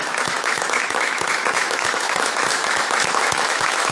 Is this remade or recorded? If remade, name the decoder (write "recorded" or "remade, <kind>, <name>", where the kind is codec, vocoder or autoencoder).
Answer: remade, autoencoder, DAC-VAE